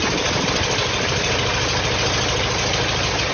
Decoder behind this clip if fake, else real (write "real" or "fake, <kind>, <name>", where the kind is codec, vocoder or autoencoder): real